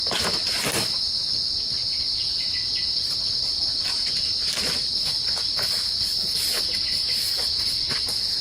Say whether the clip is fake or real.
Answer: real